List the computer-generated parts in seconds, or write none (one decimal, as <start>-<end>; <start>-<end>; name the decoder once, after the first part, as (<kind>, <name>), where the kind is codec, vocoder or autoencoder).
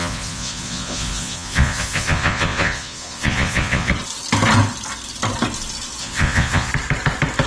0.0-3.9 (vocoder, Vocos); 6.0-6.7